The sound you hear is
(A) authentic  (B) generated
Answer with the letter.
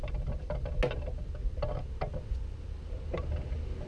A